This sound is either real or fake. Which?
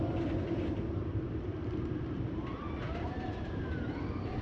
fake